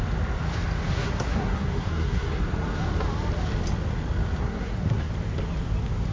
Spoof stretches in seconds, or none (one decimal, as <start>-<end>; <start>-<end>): 0.9-2.4; 4.4-5.1